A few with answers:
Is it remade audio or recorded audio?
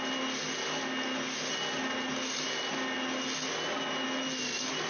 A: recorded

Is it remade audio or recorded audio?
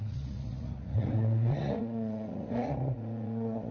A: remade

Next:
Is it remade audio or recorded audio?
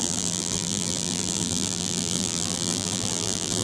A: remade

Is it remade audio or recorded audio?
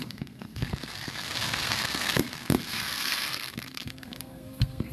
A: remade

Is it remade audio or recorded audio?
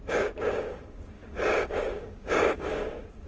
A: remade